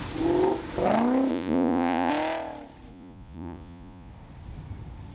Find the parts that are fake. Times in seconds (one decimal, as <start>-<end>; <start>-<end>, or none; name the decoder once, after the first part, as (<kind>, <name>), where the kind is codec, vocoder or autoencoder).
1.3-2.1 (vocoder, Vocos); 2.9-4.1